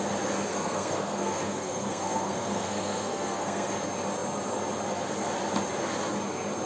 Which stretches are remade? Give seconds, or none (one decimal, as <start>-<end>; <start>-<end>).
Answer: 0.5-3.7